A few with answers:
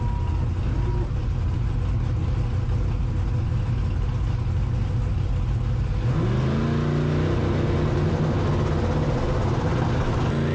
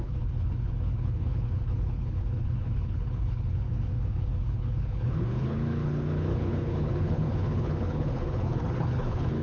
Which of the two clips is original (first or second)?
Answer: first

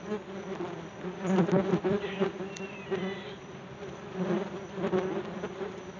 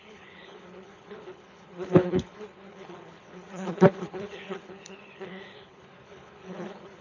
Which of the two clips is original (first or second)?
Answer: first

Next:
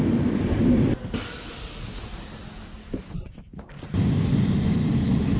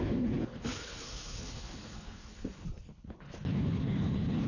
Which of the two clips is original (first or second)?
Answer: first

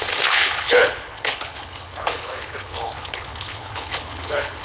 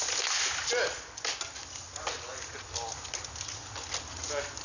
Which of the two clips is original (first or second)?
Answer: second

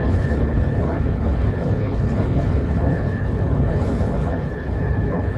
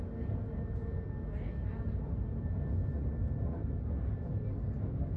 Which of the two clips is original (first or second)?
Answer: second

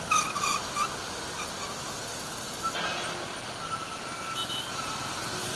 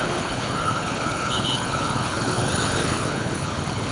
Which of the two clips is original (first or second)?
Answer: first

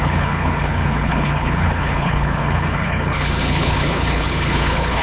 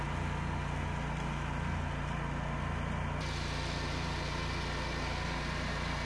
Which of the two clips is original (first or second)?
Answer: second